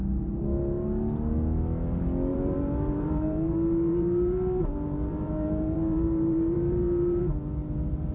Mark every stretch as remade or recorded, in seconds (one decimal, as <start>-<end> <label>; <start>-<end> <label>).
0.0-2.3 recorded; 2.3-7.2 remade; 7.2-8.1 recorded